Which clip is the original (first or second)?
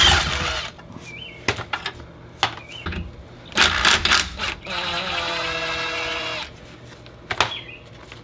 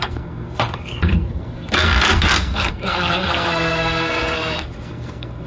first